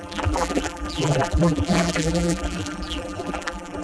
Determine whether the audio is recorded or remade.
remade